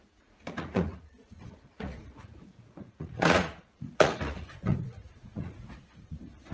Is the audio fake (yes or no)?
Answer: yes